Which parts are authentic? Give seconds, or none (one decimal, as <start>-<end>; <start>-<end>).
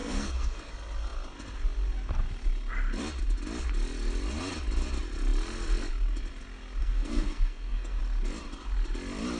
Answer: 0.7-6.8; 8.0-9.4